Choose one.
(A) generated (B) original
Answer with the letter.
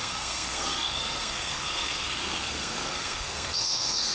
A